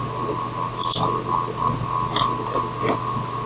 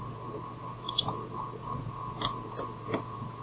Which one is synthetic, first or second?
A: second